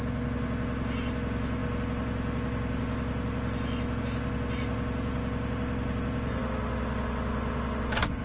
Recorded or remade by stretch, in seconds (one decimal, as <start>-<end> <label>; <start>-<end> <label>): 0.0-8.2 recorded